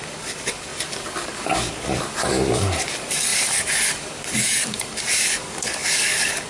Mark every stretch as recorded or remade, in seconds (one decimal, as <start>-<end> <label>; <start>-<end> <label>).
0.0-6.5 remade